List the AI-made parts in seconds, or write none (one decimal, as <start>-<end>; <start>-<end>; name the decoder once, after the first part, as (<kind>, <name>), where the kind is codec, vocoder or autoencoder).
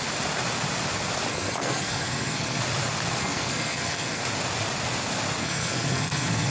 1.3-2.6 (codec, SNAC); 3.2-4.2; 5.4-6.5